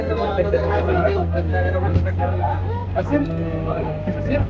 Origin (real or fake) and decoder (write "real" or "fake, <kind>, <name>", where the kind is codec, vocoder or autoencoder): fake, codec, SNAC